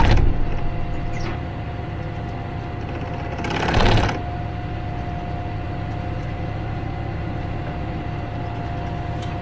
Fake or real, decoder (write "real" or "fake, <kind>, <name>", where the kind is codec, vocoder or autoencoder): real